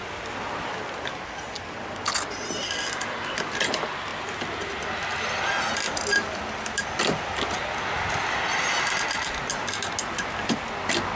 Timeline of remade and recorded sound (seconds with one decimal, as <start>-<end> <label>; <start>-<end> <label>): 0.0-11.2 recorded